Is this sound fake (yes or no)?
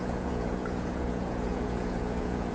yes